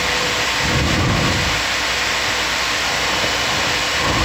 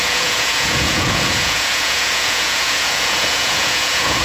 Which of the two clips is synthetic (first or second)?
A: second